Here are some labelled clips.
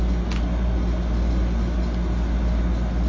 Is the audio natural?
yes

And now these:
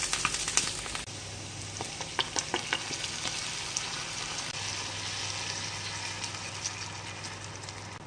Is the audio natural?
yes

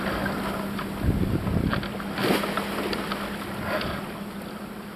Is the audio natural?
yes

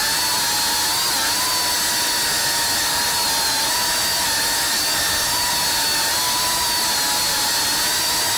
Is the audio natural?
yes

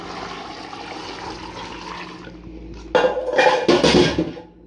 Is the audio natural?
yes